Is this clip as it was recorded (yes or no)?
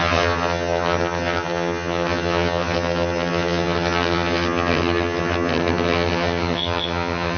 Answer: no